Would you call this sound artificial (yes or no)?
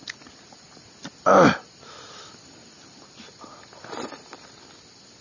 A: no